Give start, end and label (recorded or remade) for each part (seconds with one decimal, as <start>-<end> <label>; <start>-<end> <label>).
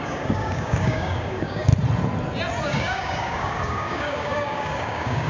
0.0-1.7 remade; 1.7-2.6 recorded; 2.6-5.3 remade